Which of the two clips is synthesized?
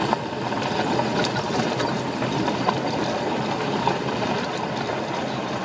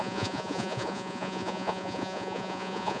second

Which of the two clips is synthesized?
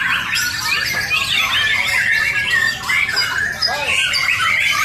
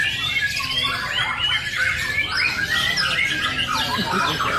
second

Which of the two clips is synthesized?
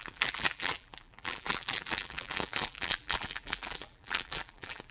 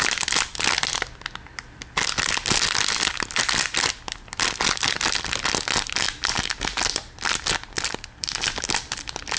first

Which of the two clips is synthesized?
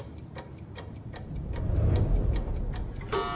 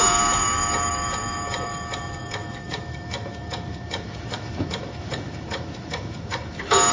second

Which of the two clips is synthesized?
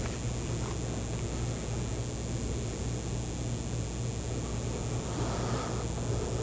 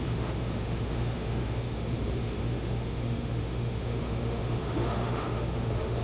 second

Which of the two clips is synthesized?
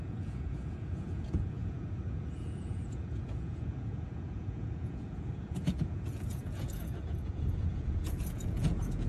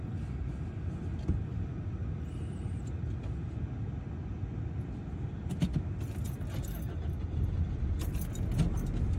first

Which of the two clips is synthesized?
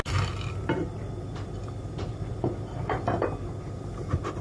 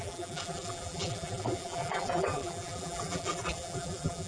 second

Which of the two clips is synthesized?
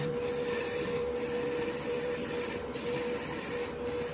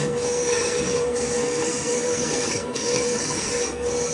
second